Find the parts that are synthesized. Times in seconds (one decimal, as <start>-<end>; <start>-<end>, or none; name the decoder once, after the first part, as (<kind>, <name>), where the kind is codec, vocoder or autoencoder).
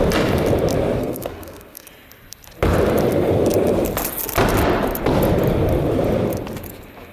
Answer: 1.0-1.9 (codec, SNAC)